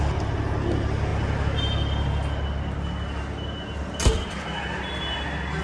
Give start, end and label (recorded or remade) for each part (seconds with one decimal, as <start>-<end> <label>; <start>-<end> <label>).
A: 0.0-5.6 recorded